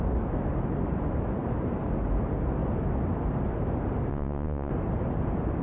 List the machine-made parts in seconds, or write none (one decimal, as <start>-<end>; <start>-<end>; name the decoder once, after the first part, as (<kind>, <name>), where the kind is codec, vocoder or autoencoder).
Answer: 4.1-4.7 (vocoder, Vocos)